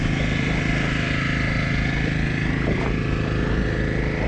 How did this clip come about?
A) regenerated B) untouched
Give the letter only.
B